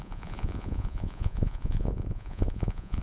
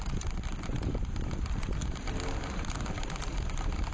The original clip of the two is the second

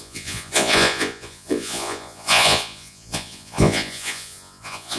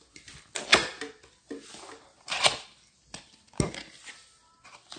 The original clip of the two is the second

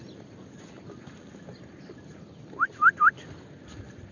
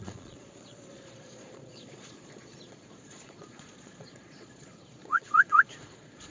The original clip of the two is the first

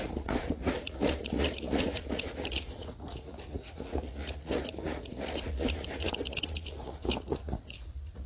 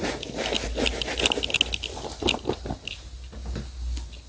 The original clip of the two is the second